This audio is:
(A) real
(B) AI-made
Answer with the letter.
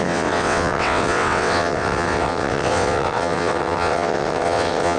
B